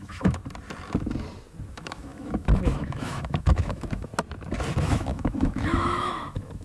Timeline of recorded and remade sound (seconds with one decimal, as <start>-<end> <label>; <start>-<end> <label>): 0.0-0.4 remade; 0.4-1.7 recorded; 1.7-4.1 remade; 4.1-4.8 recorded; 4.8-6.6 remade

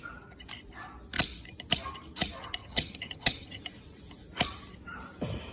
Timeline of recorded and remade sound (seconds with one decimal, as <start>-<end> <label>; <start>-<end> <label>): 0.0-2.6 recorded; 2.6-3.6 remade; 3.6-5.5 recorded

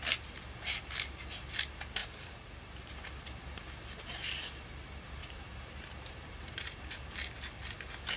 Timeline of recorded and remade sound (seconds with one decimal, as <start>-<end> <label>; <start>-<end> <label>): 0.0-2.0 recorded; 2.0-2.9 remade; 2.9-5.2 recorded; 5.2-6.9 remade; 6.9-8.2 recorded

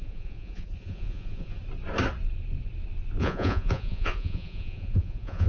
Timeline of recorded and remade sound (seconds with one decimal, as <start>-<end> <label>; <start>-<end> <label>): 0.0-1.6 remade; 1.6-3.2 recorded; 3.2-5.5 remade

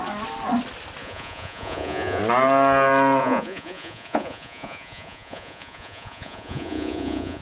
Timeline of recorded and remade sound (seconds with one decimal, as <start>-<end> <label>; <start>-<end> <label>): 0.0-1.0 recorded; 1.0-2.2 remade; 2.2-3.2 recorded; 3.2-7.4 remade